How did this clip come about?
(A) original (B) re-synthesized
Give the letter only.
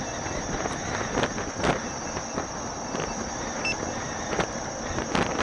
A